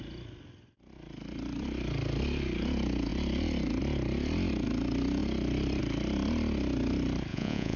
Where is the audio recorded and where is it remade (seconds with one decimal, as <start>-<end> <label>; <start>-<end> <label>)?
0.0-7.3 recorded; 7.3-7.8 remade